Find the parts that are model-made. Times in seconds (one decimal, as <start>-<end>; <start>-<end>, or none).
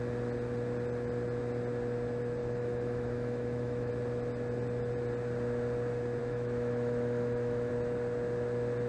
2.4-3.9; 6.2-7.7